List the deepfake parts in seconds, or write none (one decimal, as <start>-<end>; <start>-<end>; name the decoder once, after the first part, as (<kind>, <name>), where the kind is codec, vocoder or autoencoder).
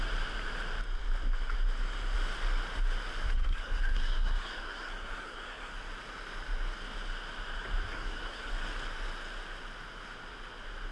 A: 3.3-5.7 (codec, SNAC); 7.9-8.5